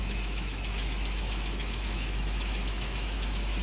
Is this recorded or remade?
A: remade